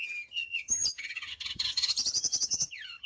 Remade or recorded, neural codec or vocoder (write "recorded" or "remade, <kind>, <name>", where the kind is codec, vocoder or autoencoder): remade, vocoder, HiFi-GAN